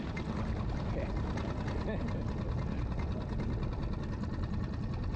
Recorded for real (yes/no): yes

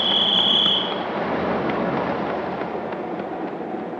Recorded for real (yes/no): yes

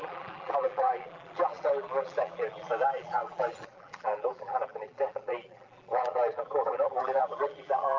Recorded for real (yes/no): no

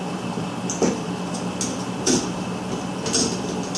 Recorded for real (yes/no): yes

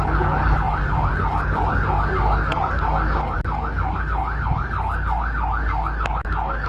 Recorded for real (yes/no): no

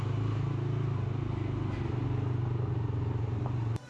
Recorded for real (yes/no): yes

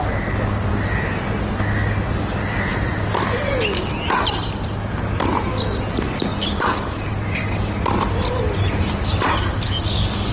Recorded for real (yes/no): yes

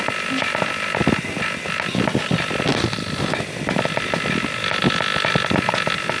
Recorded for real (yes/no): yes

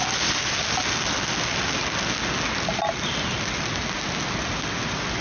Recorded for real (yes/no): yes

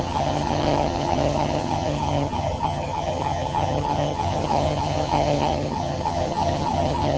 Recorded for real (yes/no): no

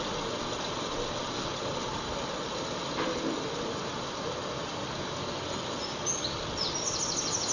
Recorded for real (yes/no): yes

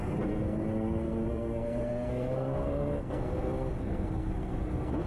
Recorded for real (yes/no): no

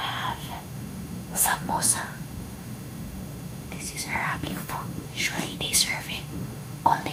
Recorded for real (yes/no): no